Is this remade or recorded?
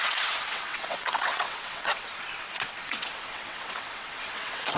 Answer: remade